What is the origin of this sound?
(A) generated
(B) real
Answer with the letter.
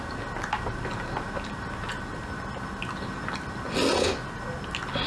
B